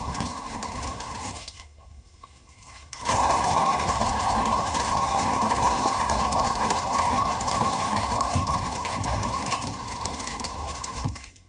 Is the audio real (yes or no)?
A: no